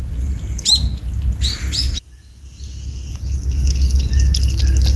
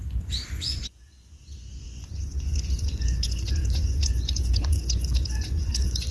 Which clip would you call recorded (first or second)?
first